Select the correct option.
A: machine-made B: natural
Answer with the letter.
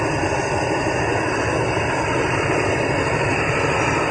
B